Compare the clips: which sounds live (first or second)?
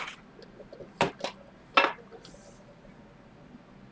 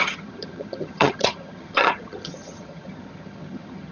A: first